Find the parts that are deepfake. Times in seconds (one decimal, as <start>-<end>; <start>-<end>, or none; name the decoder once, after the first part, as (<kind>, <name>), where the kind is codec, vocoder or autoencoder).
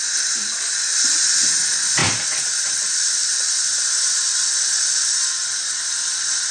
2.0-2.8 (vocoder, BigVGAN v2); 3.2-6.5